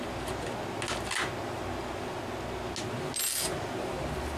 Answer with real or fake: real